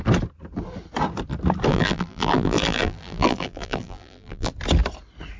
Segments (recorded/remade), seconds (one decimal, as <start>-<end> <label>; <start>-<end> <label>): 0.0-1.7 recorded; 1.7-4.5 remade; 4.5-5.4 recorded